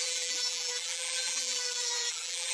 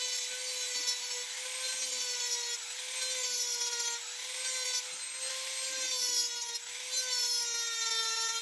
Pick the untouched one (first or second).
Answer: second